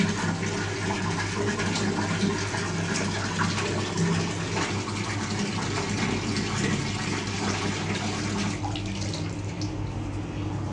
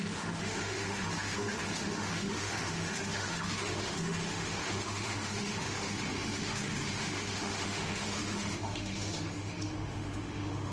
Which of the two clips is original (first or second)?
first